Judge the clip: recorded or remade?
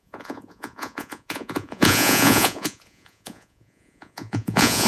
remade